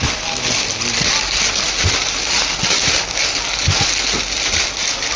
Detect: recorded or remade recorded